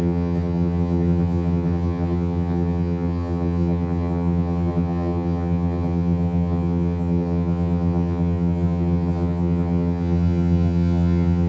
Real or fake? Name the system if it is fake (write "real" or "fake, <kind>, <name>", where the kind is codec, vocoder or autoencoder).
fake, vocoder, HiFi-GAN